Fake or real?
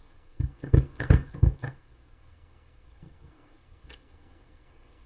fake